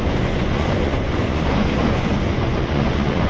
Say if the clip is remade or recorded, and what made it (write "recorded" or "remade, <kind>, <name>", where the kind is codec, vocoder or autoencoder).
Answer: remade, vocoder, Vocos